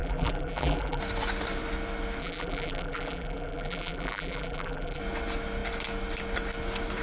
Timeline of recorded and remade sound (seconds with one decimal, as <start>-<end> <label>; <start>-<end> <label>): 0.0-1.0 remade; 1.0-2.2 recorded; 2.2-5.0 remade; 5.0-7.0 recorded